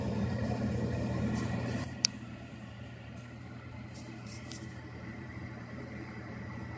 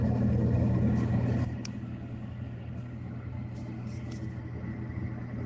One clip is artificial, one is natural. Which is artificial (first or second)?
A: first